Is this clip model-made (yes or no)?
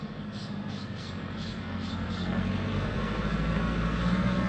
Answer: yes